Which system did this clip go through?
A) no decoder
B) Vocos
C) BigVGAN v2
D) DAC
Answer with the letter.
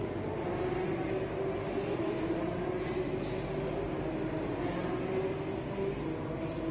A